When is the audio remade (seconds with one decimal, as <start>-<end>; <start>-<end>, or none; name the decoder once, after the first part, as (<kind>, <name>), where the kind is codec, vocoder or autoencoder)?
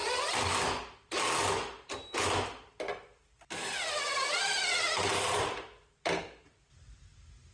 none